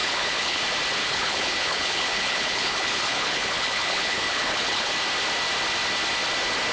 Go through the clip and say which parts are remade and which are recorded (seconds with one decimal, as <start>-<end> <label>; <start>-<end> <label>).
0.0-0.6 remade; 0.6-1.0 recorded; 1.0-4.9 remade; 4.9-6.7 recorded